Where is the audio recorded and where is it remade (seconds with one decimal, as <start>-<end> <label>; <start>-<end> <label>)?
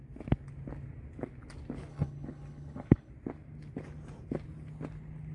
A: 0.0-1.9 recorded; 1.9-3.1 remade; 3.1-5.3 recorded